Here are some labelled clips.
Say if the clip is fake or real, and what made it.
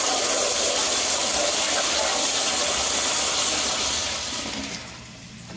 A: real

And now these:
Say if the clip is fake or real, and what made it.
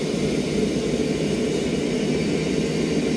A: real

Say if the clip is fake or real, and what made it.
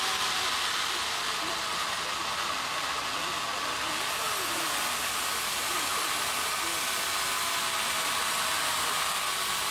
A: real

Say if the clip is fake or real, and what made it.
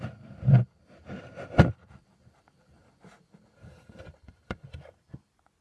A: fake, vocoder, BigVGAN v2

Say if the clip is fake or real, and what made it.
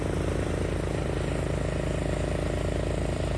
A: fake, vocoder, BigVGAN v2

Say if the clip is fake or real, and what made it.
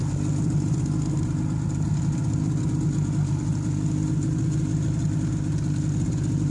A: real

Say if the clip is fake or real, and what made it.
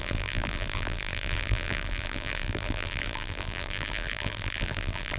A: fake, vocoder, BigVGAN v2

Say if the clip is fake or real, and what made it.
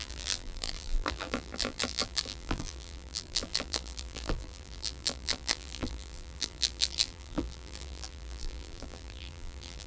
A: fake, vocoder, BigVGAN v2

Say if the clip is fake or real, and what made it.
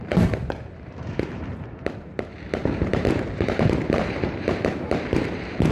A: fake, vocoder, BigVGAN v2